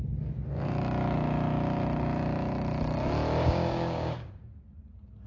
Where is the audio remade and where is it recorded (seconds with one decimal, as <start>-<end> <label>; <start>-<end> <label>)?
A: 0.0-3.4 recorded; 3.4-4.3 remade; 4.3-5.3 recorded